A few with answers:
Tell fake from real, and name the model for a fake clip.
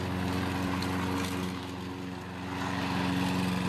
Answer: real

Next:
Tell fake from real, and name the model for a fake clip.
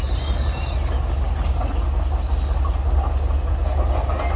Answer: real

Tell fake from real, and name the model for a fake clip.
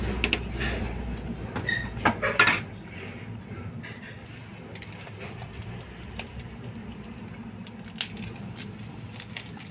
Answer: real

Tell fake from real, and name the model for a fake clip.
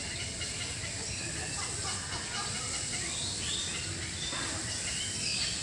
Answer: real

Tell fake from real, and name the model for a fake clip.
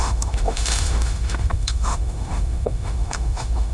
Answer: fake, autoencoder, DAC-VAE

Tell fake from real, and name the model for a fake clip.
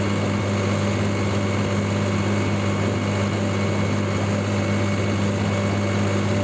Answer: real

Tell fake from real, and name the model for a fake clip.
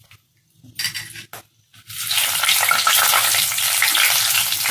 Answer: real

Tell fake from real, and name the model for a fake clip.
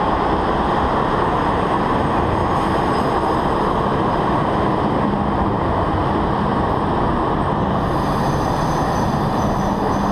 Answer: real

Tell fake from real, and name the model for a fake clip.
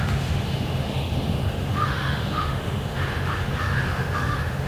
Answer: fake, autoencoder, DAC-VAE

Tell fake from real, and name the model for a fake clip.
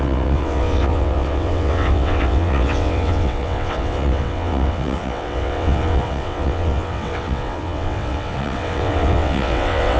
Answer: fake, vocoder, WaveNeXt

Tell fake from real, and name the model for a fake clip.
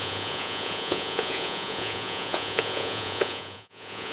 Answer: fake, vocoder, Vocos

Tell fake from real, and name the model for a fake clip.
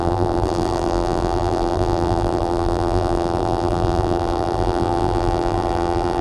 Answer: fake, vocoder, BigVGAN v2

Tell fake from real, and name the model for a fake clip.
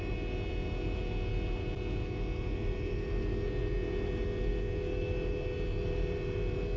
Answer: real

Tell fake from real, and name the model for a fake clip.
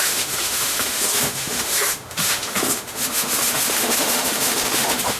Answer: fake, autoencoder, DAC-VAE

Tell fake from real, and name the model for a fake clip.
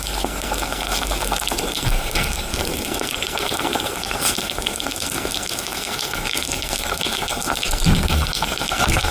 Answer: fake, codec, SNAC